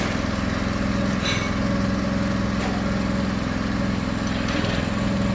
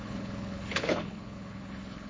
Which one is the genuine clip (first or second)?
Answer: first